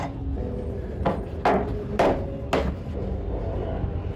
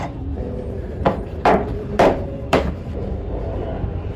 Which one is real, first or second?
first